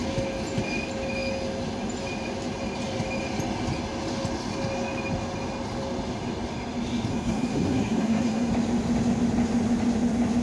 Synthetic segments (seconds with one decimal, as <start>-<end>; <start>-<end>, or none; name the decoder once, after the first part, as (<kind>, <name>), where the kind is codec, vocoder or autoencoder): 7.1-8.5 (codec, SNAC)